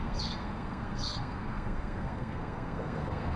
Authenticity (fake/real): fake